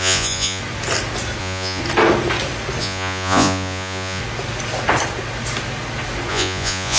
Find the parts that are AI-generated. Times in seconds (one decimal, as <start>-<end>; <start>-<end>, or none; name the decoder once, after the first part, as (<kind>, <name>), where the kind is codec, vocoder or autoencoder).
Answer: 0.0-0.6 (vocoder, Vocos); 1.4-1.8; 2.8-4.2; 6.3-7.0